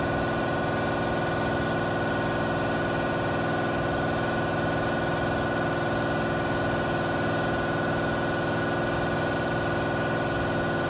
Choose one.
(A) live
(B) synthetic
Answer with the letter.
A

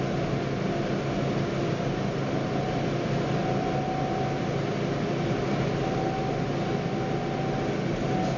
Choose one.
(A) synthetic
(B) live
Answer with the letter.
B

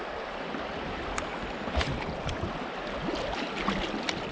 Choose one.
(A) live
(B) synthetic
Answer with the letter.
A